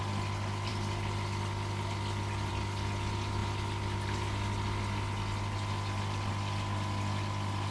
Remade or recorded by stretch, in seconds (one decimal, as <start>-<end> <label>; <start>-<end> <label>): 0.0-7.7 recorded